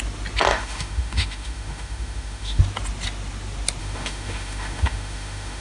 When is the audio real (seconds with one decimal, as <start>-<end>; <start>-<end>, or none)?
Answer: 0.0-0.5; 2.6-3.8